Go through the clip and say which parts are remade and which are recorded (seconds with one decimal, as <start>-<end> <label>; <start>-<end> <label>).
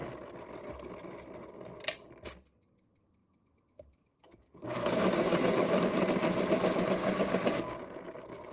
0.0-3.2 recorded; 3.2-5.8 remade; 5.8-7.0 recorded; 7.0-8.0 remade; 8.0-8.5 recorded